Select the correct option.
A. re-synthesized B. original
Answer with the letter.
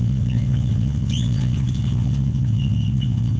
A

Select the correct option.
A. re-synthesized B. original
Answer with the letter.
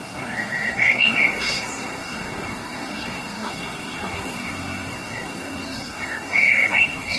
A